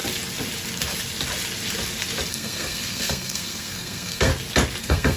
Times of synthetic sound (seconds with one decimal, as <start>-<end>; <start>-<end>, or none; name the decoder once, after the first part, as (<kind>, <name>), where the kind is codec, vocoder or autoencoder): 2.3-4.3 (codec, SNAC); 4.8-5.2